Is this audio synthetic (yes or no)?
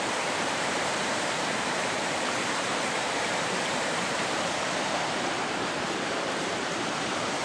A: yes